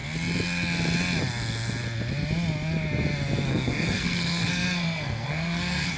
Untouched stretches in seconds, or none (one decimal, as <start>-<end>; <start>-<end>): 0.0-3.5